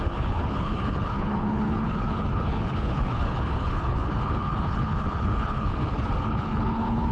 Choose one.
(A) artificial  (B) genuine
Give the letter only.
A